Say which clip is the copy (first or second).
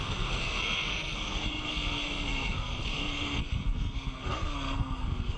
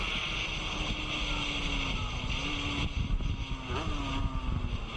first